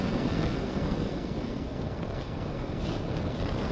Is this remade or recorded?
remade